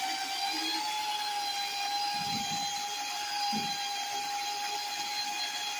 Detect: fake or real fake